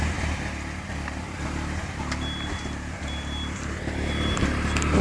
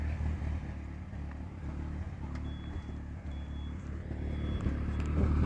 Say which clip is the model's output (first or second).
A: first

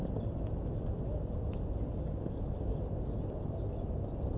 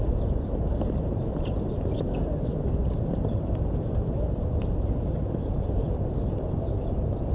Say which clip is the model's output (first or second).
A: second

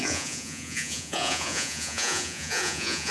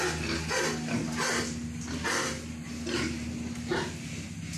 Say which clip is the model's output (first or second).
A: first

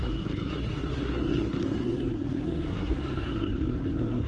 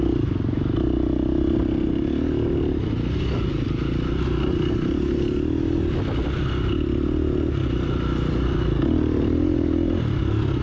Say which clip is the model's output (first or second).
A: first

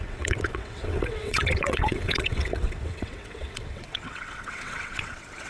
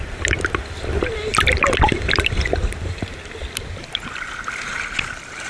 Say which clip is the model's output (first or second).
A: first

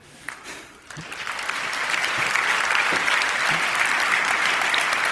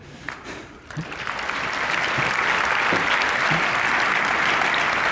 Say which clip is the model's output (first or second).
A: first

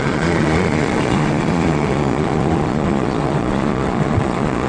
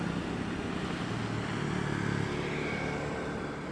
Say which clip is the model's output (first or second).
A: first